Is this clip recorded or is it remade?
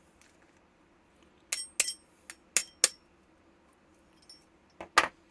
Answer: recorded